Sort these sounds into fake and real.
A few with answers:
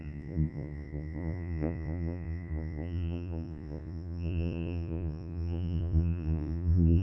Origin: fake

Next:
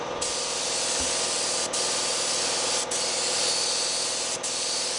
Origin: real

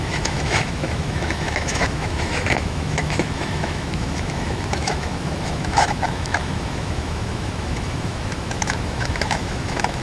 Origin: fake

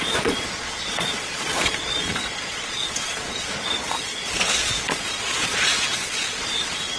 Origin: fake